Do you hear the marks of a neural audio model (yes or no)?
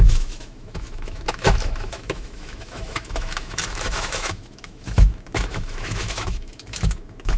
yes